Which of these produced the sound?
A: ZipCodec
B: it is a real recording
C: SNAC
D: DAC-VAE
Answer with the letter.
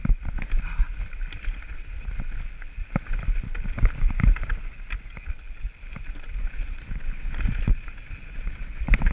B